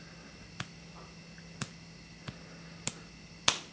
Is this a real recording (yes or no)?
yes